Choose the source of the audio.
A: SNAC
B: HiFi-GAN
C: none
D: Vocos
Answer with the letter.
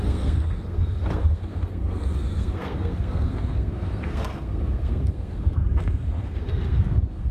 A